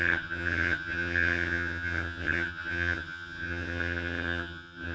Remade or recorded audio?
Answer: remade